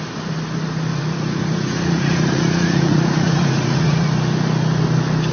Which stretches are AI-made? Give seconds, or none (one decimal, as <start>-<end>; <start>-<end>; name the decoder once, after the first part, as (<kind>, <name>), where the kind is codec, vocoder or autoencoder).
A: 0.9-4.1 (vocoder, Vocos)